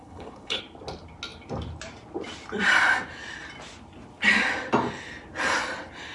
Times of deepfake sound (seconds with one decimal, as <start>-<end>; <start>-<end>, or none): 0.0-0.6